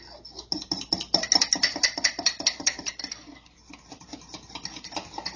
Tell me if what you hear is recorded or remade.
recorded